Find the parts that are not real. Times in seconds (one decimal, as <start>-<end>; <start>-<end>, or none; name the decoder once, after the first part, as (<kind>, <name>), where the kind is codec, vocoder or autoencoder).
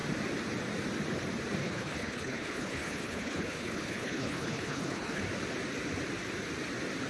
1.6-5.2 (codec, HILCodec)